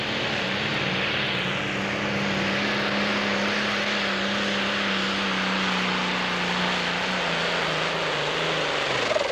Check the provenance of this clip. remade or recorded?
recorded